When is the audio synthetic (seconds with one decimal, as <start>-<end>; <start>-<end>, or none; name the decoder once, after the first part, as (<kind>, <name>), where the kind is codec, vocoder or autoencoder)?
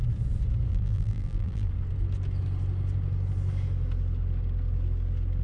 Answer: 0.7-1.7 (vocoder, BigVGAN v2)